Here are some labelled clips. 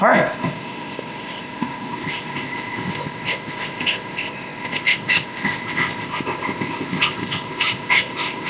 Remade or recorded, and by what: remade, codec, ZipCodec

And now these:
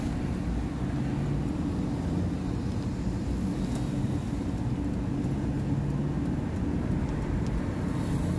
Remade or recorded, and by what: recorded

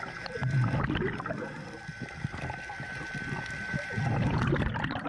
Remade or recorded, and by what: recorded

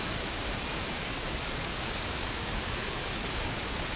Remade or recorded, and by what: remade, codec, DAC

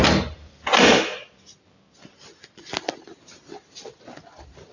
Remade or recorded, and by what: recorded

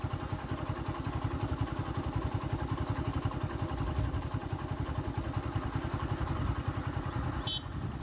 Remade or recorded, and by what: recorded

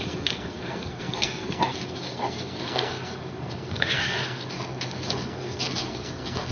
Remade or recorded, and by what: remade, codec, SNAC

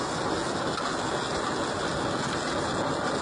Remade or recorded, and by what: recorded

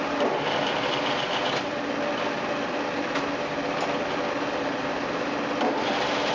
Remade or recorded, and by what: recorded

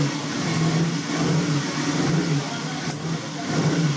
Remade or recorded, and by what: recorded